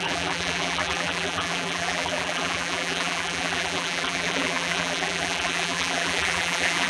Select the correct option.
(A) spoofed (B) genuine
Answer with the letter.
A